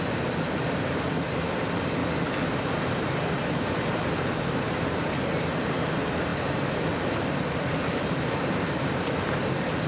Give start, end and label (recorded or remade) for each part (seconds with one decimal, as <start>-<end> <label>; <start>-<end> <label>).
0.0-2.0 remade; 2.0-3.5 recorded; 3.5-6.3 remade; 6.3-7.1 recorded; 7.1-9.9 remade